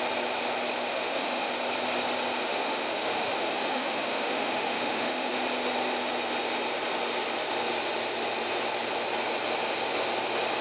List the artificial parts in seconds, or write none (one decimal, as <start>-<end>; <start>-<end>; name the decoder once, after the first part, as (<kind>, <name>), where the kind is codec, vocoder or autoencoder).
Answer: 0.9-1.5 (autoencoder, DAC-VAE); 2.4-5.3